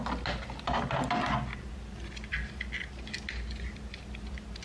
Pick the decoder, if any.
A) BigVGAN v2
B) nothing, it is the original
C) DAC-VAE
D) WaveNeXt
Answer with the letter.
B